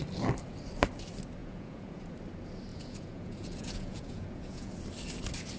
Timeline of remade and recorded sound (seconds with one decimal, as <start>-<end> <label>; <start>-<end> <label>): 0.0-1.4 recorded; 1.4-2.1 remade; 2.1-2.7 recorded; 2.7-4.7 remade; 4.7-5.6 recorded

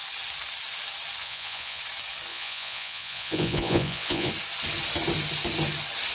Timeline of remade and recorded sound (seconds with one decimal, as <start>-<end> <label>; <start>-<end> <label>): 0.0-1.2 recorded; 1.2-1.8 remade; 1.8-2.3 recorded; 2.3-4.3 remade; 4.3-6.1 recorded

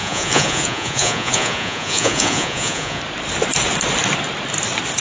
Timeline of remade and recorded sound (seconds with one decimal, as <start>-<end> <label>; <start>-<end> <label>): 0.0-3.0 remade; 3.0-5.0 recorded

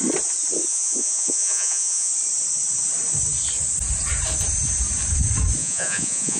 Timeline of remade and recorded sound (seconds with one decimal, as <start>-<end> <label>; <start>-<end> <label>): 0.0-0.7 recorded; 0.7-2.1 remade; 2.1-5.6 recorded; 5.6-6.4 remade

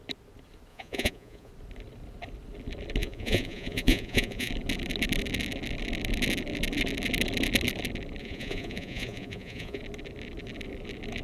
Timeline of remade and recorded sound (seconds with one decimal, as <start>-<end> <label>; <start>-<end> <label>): 0.0-0.7 recorded; 0.7-1.5 remade; 1.5-3.0 recorded; 3.0-4.5 remade; 4.5-8.2 recorded; 8.2-9.8 remade; 9.8-11.2 recorded

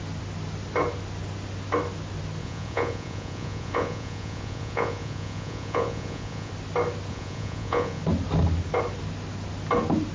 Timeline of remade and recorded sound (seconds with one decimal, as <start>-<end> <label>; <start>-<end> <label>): 0.0-2.4 recorded; 2.4-6.5 remade; 6.5-7.1 recorded; 7.1-8.0 remade; 8.0-10.1 recorded

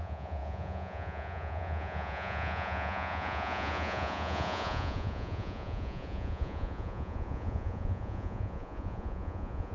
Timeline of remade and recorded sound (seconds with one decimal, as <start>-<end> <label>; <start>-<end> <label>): 0.0-9.7 remade